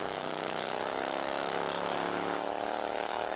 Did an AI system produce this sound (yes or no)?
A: yes